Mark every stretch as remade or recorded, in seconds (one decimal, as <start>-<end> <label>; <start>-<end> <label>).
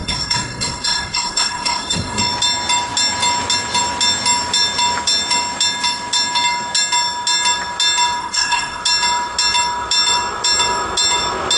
0.0-2.2 remade; 2.2-8.2 recorded; 8.2-8.8 remade; 8.8-11.6 recorded